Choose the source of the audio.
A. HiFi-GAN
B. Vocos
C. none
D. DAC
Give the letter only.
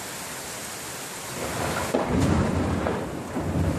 C